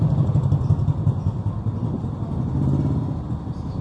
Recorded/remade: recorded